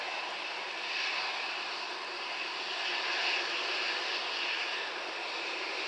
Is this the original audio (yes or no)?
yes